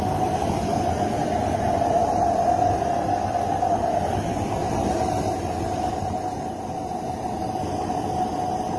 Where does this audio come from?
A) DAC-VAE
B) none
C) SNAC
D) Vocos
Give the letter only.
B